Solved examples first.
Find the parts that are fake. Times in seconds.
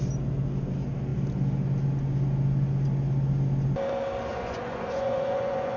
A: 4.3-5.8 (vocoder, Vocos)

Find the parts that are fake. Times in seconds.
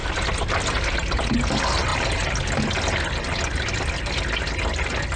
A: none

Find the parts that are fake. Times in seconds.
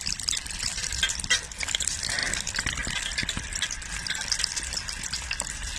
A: none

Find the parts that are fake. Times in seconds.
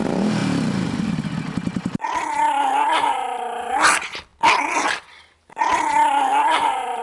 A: 6.3-7.0 (vocoder, Vocos)